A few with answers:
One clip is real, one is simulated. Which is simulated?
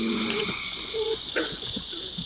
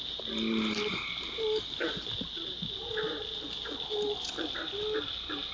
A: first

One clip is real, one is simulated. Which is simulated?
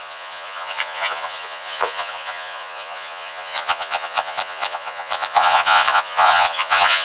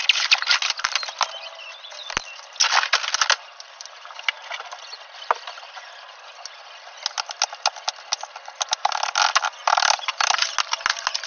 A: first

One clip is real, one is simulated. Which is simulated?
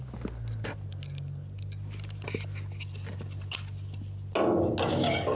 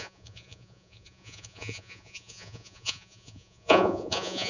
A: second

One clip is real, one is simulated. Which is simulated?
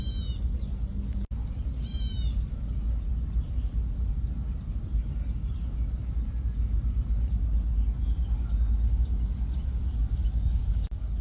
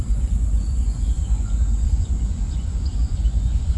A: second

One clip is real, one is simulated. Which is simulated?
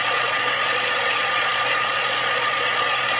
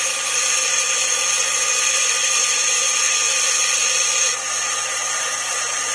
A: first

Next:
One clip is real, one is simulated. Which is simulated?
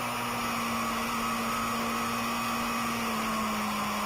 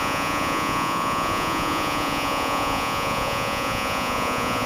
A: second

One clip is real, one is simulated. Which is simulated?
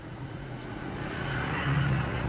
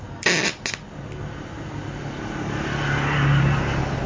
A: first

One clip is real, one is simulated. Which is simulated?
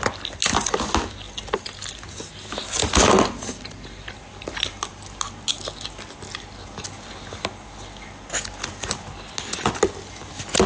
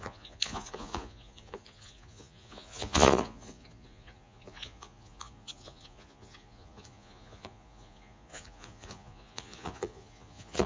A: second